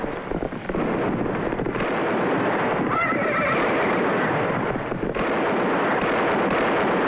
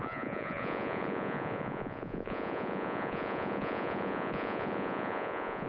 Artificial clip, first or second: second